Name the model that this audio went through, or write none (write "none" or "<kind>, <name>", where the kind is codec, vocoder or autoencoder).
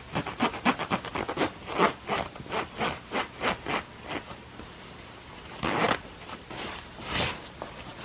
none